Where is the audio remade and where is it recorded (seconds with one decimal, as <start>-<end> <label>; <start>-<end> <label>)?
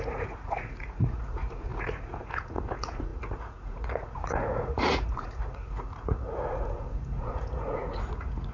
0.0-8.5 remade